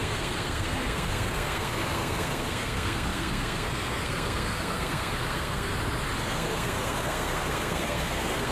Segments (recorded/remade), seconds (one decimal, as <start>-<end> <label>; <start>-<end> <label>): 0.0-5.7 remade; 5.7-6.2 recorded; 6.2-8.5 remade